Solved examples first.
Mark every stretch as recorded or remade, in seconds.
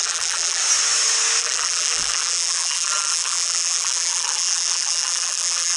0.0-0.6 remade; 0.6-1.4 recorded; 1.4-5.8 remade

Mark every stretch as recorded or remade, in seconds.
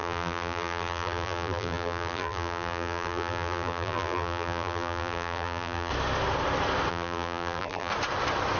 0.0-5.9 remade; 5.9-6.9 recorded; 6.9-7.9 remade; 7.9-8.6 recorded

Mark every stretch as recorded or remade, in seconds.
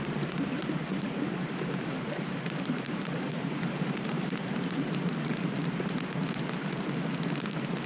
0.0-0.9 recorded; 0.9-5.3 remade; 5.3-7.9 recorded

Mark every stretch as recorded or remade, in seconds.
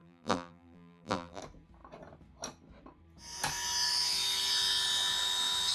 0.0-1.4 remade; 1.4-5.7 recorded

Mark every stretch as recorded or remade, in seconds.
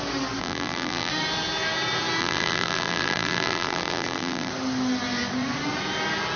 0.0-0.4 recorded; 0.4-1.1 remade; 1.1-2.2 recorded; 2.2-4.5 remade; 4.5-6.4 recorded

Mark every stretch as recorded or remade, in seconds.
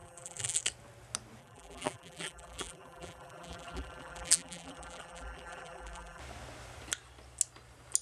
0.0-0.6 remade; 0.6-1.4 recorded; 1.4-6.2 remade; 6.2-8.0 recorded